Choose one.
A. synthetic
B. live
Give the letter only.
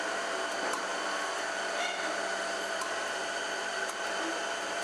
A